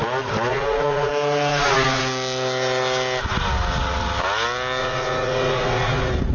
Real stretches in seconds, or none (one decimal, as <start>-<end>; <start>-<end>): 0.0-0.5; 1.1-1.5; 2.0-4.8

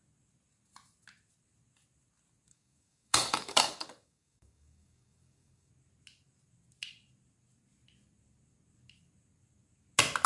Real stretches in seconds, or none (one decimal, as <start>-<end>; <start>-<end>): 0.0-2.5; 5.7-10.3